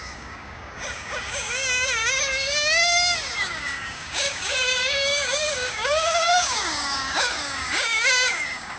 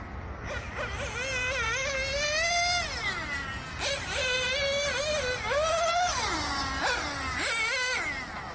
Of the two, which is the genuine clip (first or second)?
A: second